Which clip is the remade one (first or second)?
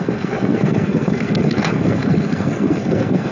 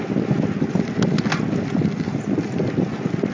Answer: first